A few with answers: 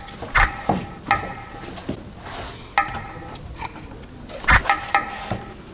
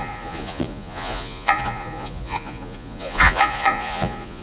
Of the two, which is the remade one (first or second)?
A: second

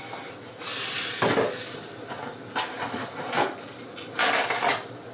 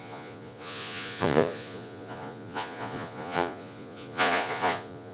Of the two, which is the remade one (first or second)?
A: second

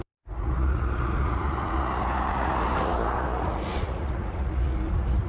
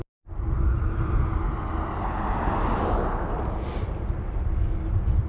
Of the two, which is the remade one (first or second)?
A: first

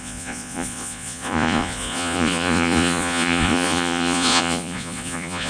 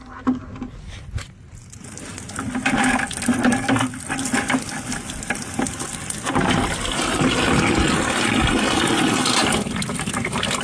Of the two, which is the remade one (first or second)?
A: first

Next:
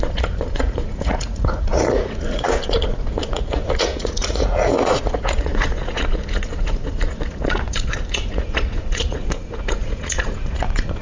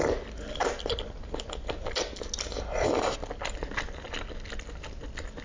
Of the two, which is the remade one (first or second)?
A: first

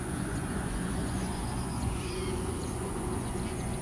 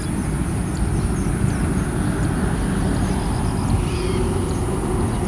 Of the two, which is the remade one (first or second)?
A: first